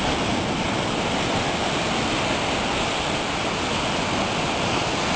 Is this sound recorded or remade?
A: recorded